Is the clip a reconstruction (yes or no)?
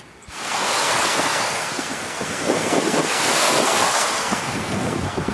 yes